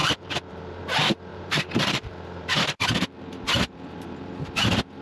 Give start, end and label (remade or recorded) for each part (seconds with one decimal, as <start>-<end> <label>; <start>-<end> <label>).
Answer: 0.0-0.8 remade; 0.8-1.3 recorded; 1.3-4.3 remade; 4.3-5.0 recorded